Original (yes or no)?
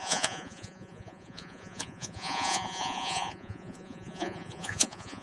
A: no